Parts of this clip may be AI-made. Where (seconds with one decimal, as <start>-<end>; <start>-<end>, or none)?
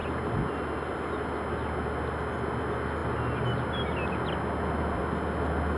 none